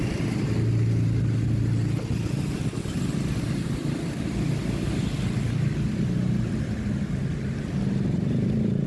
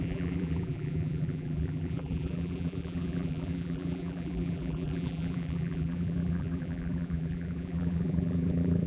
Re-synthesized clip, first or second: second